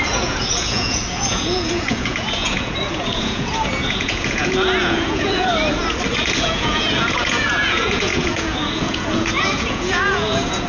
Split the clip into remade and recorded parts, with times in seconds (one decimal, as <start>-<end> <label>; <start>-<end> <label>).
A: 0.0-5.5 remade; 5.5-6.1 recorded; 6.1-10.7 remade